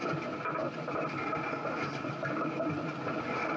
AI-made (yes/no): no